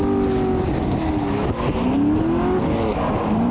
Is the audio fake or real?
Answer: real